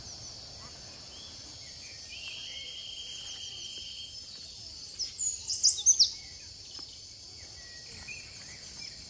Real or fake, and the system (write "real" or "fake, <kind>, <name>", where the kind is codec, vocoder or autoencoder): real